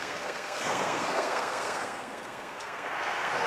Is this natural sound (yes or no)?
no